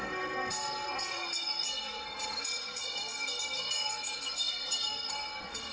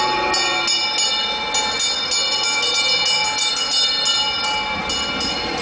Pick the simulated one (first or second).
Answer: first